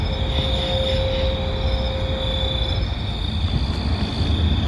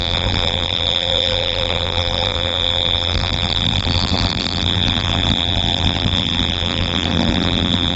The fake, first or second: second